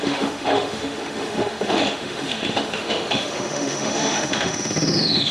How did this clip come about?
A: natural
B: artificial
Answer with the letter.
B